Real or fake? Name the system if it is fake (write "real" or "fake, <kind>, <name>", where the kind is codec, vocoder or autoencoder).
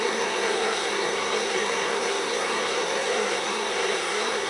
fake, codec, SNAC